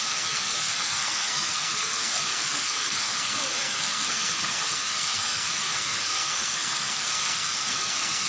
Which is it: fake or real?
fake